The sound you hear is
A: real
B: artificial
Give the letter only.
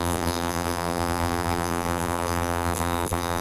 B